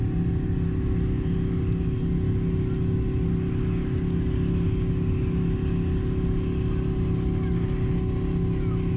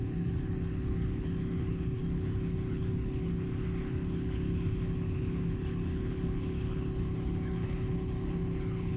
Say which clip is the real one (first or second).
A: first